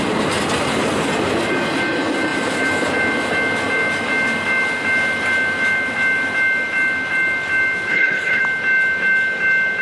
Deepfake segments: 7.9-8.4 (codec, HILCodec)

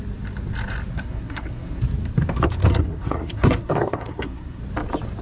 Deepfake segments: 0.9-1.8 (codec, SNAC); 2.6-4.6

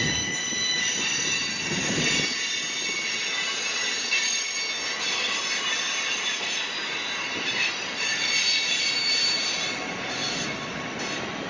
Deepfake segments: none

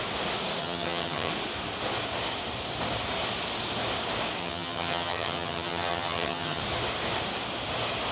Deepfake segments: 0.6-1.3 (vocoder, HiFi-GAN); 4.4-6.6

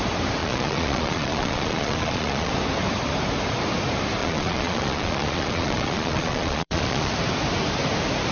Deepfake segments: 0.4-2.5 (vocoder, Vocos); 4.2-7.1

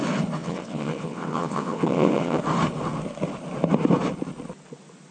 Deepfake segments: 0.4-2.4 (vocoder, WaveNeXt)

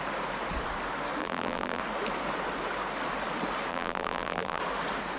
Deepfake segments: 1.2-1.8 (vocoder, BigVGAN v2); 3.7-4.6